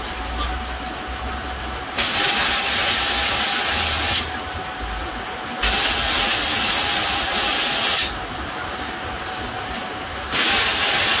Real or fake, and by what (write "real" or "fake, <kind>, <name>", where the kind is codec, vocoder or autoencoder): real